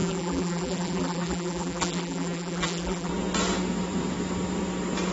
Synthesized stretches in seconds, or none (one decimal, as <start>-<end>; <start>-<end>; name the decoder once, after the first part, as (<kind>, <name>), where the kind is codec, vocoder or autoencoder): 0.0-3.1 (vocoder, BigVGAN v2)